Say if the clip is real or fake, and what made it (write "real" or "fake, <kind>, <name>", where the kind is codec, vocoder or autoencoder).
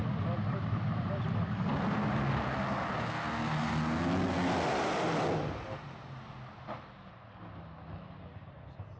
real